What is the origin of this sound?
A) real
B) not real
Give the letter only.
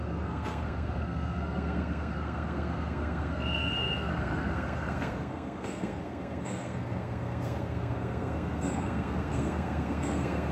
B